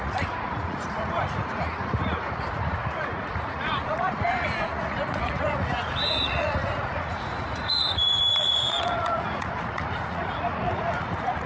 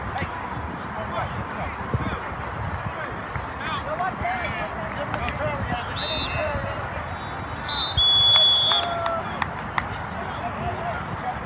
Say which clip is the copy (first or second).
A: first